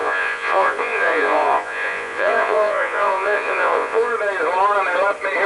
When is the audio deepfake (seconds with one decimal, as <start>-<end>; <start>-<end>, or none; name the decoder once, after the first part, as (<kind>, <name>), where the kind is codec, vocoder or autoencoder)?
0.0-4.1 (vocoder, Vocos)